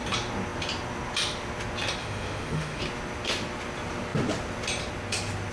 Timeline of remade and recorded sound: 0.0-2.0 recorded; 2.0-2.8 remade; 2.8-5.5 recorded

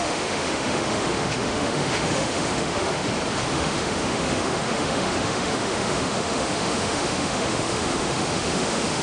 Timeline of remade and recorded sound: 0.0-3.0 remade; 3.0-3.5 recorded; 3.5-9.0 remade

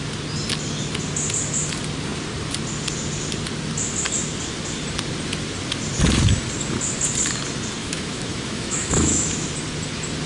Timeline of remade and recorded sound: 0.0-7.8 recorded; 7.8-9.5 remade; 9.5-10.3 recorded

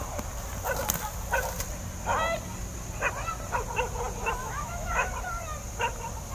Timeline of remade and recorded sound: 0.0-4.4 recorded; 4.4-5.1 remade; 5.1-6.3 recorded

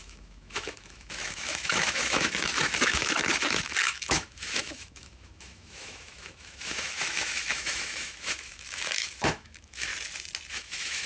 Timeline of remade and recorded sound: 0.0-9.9 remade; 9.9-10.5 recorded; 10.5-11.1 remade

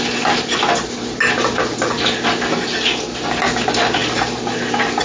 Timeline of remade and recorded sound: 0.0-5.0 recorded

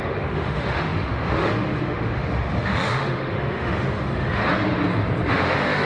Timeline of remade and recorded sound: 0.0-4.4 remade; 4.4-5.3 recorded; 5.3-5.9 remade

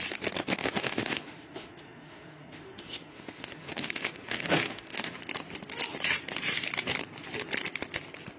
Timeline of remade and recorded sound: 0.0-0.6 recorded; 0.6-5.2 remade; 5.2-8.4 recorded